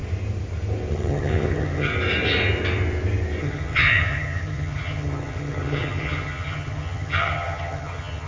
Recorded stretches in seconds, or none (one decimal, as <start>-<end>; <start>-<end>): 0.0-0.9; 1.9-3.4